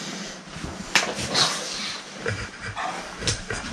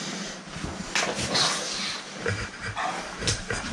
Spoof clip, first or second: first